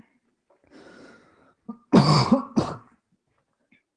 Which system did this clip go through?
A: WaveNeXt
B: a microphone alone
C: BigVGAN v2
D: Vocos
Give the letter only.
C